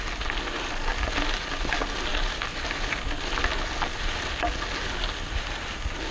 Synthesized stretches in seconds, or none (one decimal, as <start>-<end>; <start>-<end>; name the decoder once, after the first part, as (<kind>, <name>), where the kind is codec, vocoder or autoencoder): none